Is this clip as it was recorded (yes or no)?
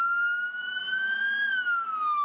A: yes